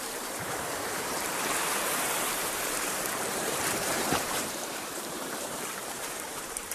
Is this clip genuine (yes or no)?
no